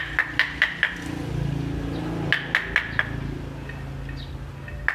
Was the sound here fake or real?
real